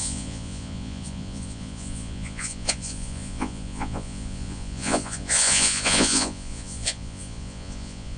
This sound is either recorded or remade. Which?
remade